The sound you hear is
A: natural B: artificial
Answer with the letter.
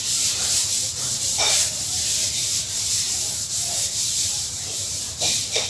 B